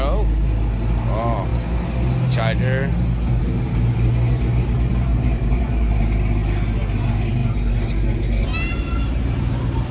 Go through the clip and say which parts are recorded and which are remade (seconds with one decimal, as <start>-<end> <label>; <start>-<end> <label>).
0.0-5.1 recorded; 5.1-6.0 remade; 6.0-9.9 recorded